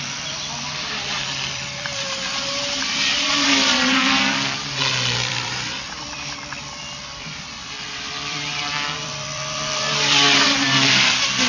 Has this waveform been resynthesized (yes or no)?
yes